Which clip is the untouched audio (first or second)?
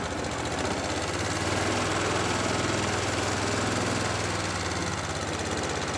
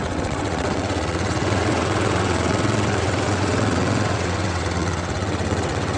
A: first